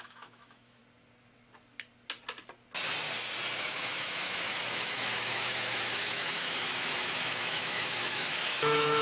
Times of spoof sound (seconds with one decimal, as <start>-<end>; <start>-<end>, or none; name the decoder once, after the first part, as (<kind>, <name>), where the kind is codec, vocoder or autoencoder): 0.0-0.8 (autoencoder, DAC-VAE); 3.6-9.0